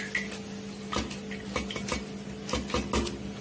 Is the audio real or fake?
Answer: real